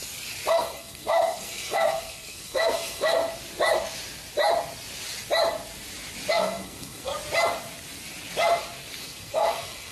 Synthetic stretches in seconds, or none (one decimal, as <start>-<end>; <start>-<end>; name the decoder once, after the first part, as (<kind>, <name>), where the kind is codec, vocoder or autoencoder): 0.5-3.2 (codec, SNAC); 6.3-7.1; 9.0-9.9